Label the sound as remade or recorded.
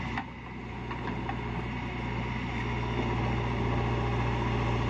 recorded